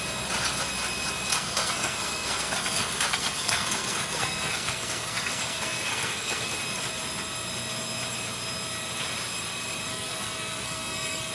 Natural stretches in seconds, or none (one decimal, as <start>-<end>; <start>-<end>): 0.0-1.3; 6.5-9.9